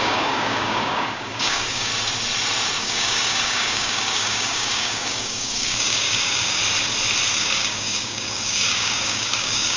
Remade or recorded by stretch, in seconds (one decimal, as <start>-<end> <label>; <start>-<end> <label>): 0.0-1.9 remade; 1.9-2.8 recorded; 2.8-6.6 remade; 6.6-7.3 recorded; 7.3-9.8 remade